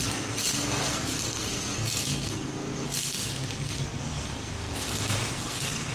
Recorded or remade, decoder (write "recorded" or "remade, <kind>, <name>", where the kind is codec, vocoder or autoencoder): remade, codec, SNAC